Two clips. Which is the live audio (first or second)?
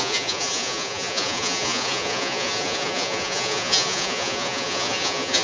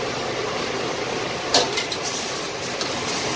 second